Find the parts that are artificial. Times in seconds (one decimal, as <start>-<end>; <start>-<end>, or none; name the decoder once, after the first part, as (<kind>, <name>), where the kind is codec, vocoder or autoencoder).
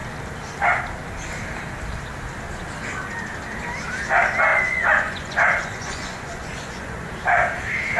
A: 4.5-7.1 (vocoder, Vocos)